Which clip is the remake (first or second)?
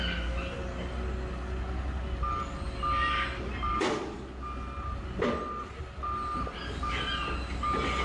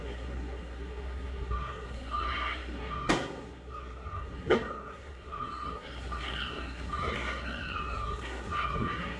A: second